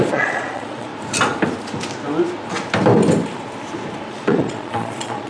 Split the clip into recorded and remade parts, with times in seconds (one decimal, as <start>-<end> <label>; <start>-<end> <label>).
0.0-0.9 remade; 0.9-4.1 recorded; 4.1-5.3 remade